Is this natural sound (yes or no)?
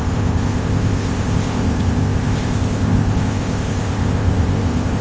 no